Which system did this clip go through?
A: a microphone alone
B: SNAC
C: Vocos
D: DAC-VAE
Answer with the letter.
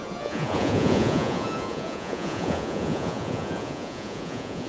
C